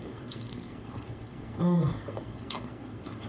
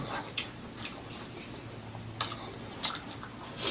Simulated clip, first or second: first